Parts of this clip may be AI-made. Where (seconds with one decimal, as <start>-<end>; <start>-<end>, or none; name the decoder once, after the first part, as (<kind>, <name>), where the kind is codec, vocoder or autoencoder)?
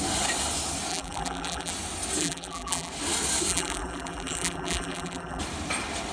0.9-1.7 (vocoder, BigVGAN v2); 2.2-2.9; 3.5-5.4